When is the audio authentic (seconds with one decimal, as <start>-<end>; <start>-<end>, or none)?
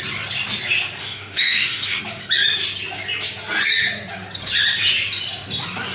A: 0.0-1.0; 2.0-5.9